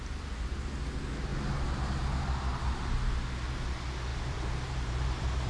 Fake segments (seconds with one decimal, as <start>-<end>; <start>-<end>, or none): 4.1-5.5